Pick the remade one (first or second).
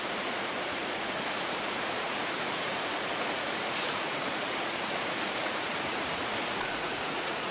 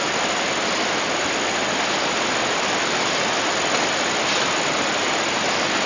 first